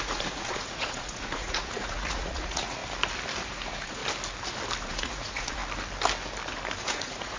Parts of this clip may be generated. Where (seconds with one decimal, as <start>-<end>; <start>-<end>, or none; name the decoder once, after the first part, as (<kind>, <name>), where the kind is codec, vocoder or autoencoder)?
0.0-2.8 (vocoder, Vocos); 3.5-4.0; 4.8-5.6; 6.8-7.4